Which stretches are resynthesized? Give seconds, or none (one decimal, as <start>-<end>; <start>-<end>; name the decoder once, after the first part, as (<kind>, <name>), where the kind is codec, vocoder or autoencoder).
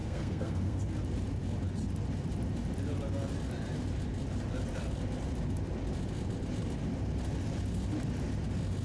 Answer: 0.0-0.8 (codec, SNAC)